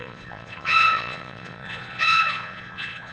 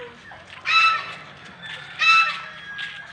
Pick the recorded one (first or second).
second